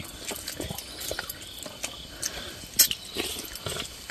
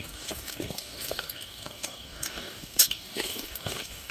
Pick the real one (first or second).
first